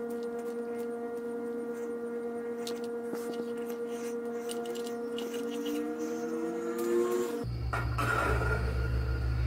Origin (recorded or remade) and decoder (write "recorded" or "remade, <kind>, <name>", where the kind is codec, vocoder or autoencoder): recorded